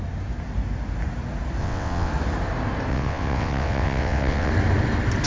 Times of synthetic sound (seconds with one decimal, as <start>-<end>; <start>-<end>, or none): 1.6-2.1; 2.9-4.5